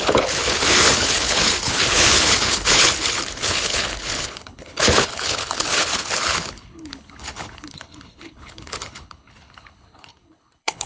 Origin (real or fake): fake